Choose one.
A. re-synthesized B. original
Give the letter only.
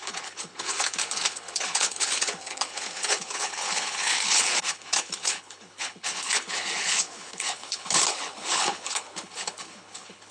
A